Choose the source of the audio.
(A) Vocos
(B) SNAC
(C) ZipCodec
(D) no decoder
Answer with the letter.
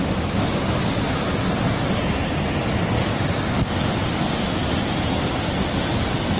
D